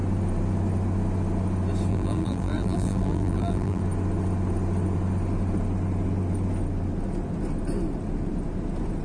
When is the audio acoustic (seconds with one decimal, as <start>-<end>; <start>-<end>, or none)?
0.0-1.9; 3.8-9.0